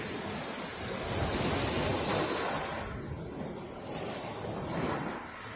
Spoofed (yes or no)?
no